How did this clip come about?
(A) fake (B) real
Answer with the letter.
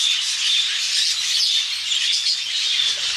B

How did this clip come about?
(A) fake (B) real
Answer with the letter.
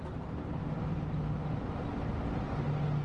B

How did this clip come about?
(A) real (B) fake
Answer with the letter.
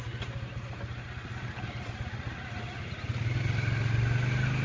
A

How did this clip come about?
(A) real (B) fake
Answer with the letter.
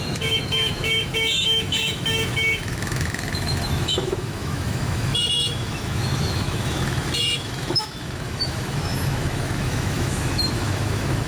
B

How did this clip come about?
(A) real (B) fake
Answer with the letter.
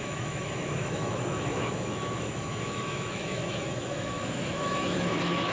B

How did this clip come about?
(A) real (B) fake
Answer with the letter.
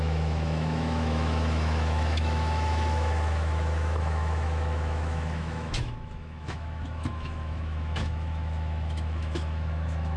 B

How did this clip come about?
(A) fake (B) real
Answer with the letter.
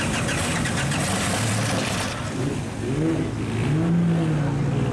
B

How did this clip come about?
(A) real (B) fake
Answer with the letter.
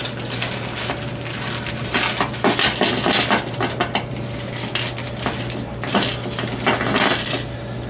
A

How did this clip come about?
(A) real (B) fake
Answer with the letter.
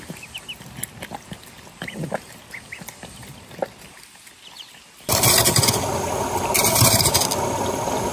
A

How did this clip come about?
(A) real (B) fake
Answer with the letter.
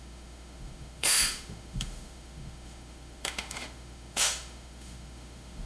B